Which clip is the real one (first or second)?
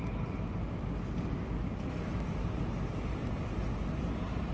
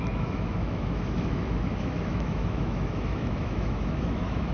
first